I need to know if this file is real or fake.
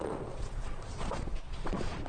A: fake